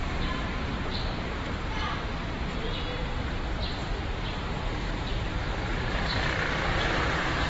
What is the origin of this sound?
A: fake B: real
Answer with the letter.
A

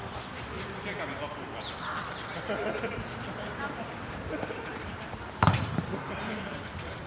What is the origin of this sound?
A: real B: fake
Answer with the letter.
A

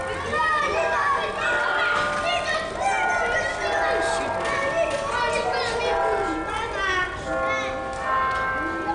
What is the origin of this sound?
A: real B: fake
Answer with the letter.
A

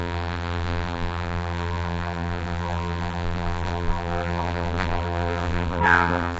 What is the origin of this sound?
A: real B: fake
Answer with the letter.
B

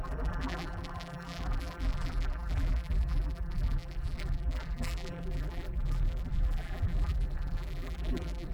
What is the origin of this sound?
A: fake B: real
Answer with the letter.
A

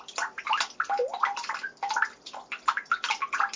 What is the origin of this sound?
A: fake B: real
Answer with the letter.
A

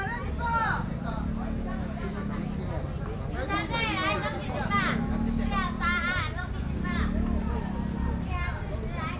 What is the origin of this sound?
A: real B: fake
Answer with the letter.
A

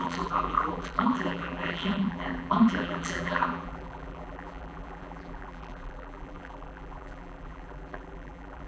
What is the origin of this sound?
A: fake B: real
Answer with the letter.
A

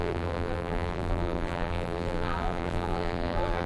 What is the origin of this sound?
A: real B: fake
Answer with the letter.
B